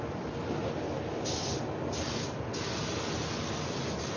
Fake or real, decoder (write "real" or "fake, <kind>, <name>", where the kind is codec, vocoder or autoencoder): real